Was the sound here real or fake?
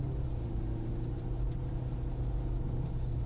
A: real